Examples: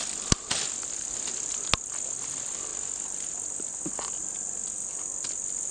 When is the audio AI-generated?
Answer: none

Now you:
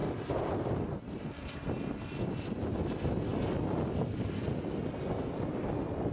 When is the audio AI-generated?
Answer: 3.3-4.8 (vocoder, BigVGAN v2)

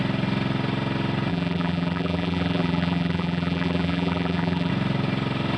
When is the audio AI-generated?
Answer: 1.3-4.7 (vocoder, BigVGAN v2)

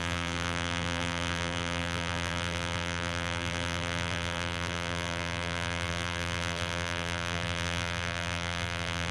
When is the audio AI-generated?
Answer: 0.0-9.1 (vocoder, BigVGAN v2)

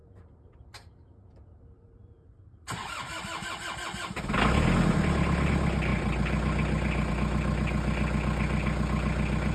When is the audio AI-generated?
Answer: 0.0-3.2 (vocoder, BigVGAN v2); 5.9-7.1

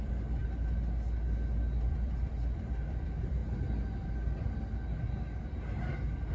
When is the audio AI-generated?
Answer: 0.0-0.4 (vocoder, BigVGAN v2); 1.9-3.4